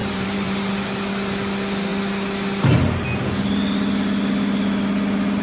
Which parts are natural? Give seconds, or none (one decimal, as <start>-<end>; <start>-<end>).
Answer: 0.7-5.4